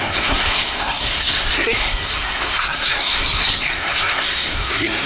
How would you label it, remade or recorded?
remade